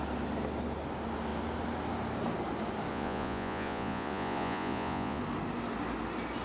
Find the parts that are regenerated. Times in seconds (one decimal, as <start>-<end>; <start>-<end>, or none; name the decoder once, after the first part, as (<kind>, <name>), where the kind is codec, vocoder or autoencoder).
2.9-5.2 (vocoder, Vocos)